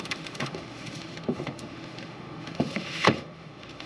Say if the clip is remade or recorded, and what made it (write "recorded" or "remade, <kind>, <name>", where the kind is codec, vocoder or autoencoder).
remade, autoencoder, DAC-VAE